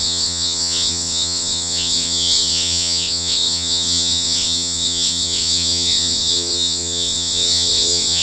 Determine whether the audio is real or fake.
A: fake